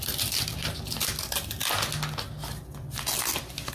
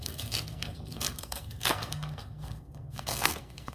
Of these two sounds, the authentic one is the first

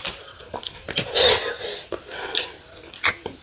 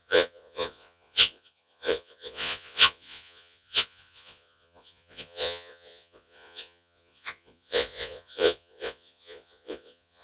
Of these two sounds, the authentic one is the first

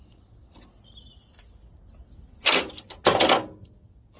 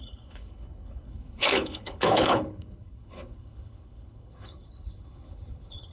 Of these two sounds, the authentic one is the first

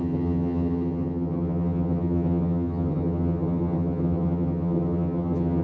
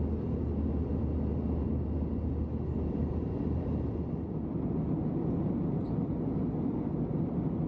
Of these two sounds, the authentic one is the second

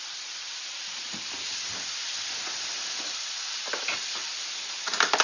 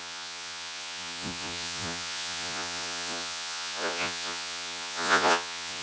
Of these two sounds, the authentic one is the first